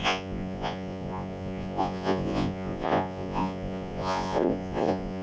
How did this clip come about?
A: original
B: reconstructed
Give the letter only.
B